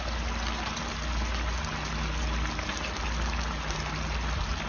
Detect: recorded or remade recorded